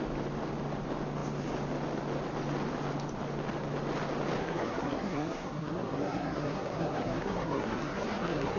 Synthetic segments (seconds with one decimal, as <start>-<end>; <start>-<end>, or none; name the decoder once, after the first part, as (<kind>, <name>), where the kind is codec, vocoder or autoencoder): 4.4-8.6 (codec, SNAC)